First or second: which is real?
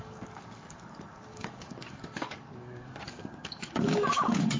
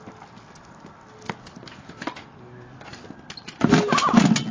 second